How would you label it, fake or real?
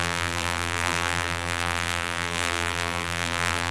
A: fake